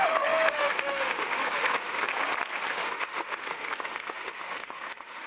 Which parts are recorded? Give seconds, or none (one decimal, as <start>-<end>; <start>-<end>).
2.1-2.7

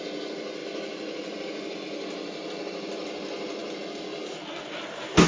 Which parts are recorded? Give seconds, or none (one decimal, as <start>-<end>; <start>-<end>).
0.0-5.3

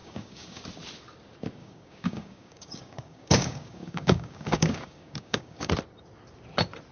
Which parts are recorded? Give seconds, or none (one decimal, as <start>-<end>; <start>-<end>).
0.6-1.6; 5.7-6.9